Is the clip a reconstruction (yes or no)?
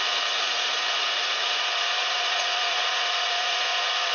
yes